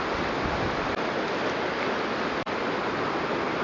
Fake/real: real